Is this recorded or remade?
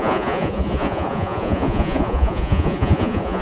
remade